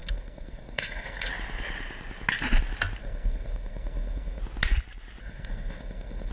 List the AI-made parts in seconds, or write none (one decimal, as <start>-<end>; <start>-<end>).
0.0-1.3; 3.0-4.4; 5.2-6.3

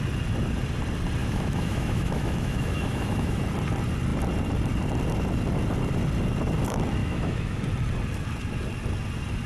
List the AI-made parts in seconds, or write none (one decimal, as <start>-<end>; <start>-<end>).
1.2-3.4; 7.0-7.6

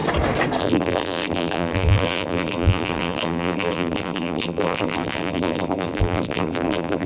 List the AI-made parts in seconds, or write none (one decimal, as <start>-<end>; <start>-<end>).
0.6-7.1

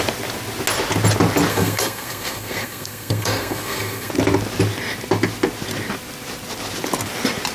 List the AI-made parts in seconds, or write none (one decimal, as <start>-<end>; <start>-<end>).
1.5-4.1

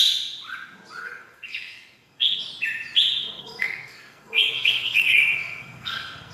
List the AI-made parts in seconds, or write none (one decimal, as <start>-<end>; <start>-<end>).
1.0-2.4; 3.2-6.3

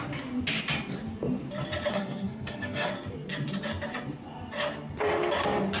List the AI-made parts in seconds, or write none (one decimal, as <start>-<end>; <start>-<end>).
1.9-2.9

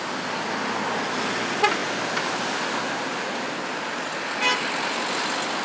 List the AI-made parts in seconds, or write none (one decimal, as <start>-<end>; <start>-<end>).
none

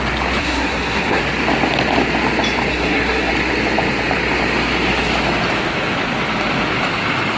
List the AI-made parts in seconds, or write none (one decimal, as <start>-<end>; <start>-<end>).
0.4-1.2; 2.7-3.3